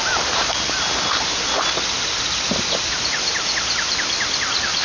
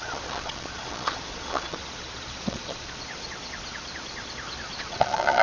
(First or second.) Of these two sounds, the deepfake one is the second